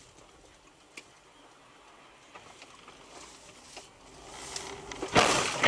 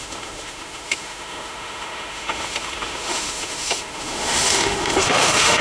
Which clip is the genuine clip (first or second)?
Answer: first